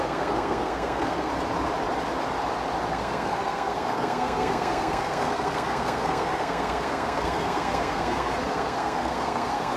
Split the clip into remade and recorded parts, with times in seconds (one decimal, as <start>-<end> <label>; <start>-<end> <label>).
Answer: 0.0-1.3 remade; 1.3-2.9 recorded; 2.9-9.8 remade